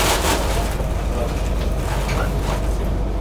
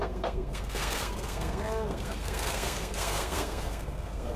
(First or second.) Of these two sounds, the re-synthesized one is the second